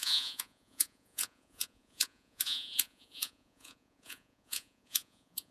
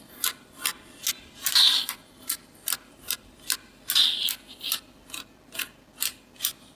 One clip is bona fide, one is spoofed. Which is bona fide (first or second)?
second